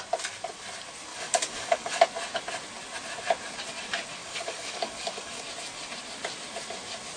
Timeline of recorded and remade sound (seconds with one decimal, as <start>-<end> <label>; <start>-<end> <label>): 0.0-1.1 recorded; 1.1-2.0 remade; 2.0-4.2 recorded; 4.2-5.4 remade; 5.4-7.2 recorded